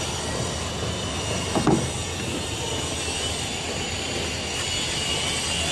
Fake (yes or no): no